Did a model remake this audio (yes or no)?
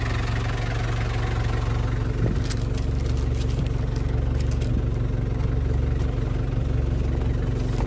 no